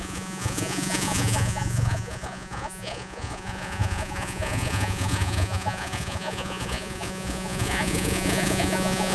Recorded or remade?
remade